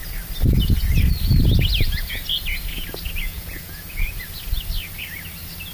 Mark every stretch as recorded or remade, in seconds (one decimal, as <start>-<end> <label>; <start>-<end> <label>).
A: 0.0-3.3 recorded; 3.3-4.2 remade; 4.2-5.7 recorded